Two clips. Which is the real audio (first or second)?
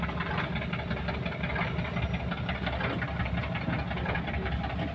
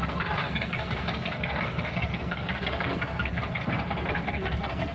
first